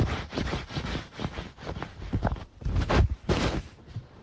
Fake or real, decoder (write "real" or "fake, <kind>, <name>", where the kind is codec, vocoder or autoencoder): fake, vocoder, BigVGAN v2